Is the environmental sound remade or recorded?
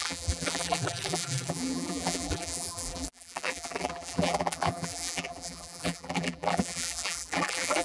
remade